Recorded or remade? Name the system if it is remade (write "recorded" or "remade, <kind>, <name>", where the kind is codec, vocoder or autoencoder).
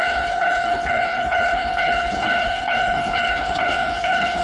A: remade, codec, HILCodec